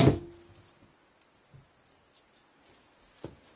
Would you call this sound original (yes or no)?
yes